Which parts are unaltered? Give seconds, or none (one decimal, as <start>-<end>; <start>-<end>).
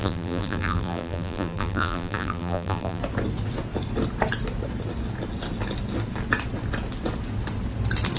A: 3.0-8.2